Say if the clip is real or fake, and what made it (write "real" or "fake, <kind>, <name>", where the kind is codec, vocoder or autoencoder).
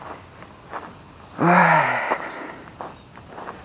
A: real